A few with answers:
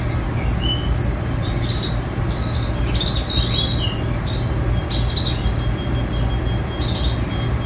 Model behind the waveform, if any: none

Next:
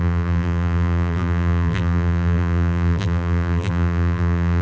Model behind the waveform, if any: vocoder, BigVGAN v2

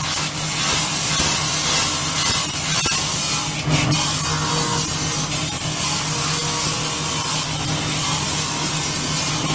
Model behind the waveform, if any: none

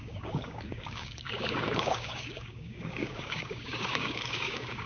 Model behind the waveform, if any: codec, DAC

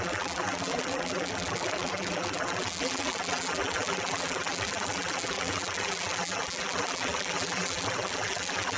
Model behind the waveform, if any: vocoder, BigVGAN v2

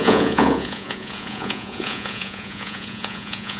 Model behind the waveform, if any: vocoder, Vocos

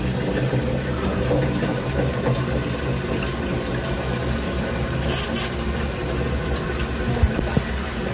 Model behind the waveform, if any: none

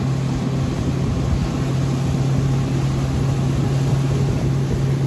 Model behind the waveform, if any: none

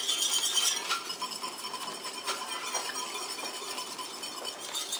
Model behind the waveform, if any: none